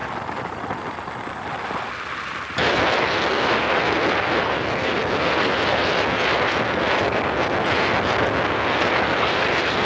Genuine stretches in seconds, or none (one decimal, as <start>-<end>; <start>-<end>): 0.0-9.9